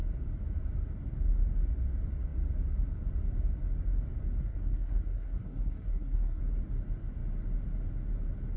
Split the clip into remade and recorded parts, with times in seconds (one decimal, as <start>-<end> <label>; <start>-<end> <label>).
0.0-4.4 recorded; 4.4-6.4 remade; 6.4-8.6 recorded